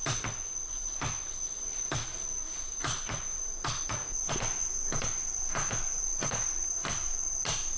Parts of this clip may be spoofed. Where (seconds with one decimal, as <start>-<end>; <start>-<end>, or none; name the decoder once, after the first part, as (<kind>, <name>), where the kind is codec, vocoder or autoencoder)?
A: none